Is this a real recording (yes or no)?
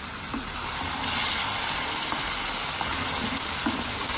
yes